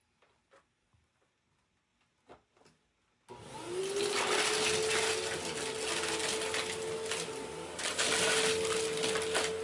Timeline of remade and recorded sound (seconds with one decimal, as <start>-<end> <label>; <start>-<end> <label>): 0.0-9.6 recorded